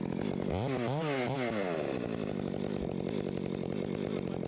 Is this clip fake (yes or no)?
no